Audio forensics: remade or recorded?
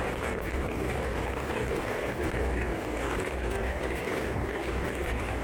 remade